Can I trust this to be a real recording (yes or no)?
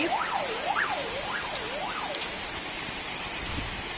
yes